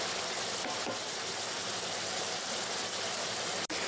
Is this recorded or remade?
recorded